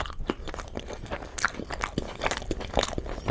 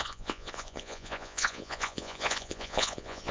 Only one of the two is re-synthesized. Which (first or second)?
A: second